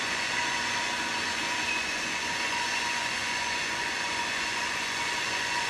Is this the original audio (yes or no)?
no